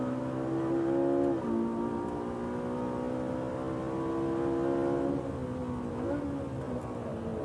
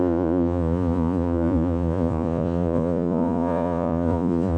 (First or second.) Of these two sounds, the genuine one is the first